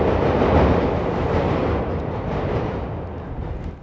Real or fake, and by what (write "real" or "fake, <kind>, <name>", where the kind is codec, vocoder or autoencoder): real